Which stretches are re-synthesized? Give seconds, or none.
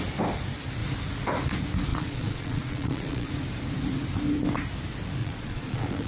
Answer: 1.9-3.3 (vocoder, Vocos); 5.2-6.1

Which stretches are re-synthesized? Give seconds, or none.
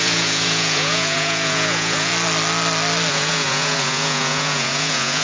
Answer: 0.0-2.1 (vocoder, Vocos); 3.1-5.2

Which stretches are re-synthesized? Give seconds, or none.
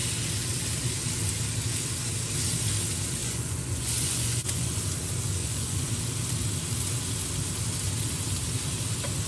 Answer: 3.2-4.8 (vocoder, Vocos); 5.4-6.0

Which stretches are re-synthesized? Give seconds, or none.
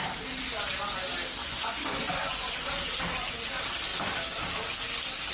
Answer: 1.4-2.7 (vocoder, Vocos)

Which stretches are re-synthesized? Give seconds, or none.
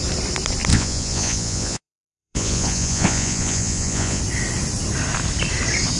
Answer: 0.7-4.2 (vocoder, Vocos)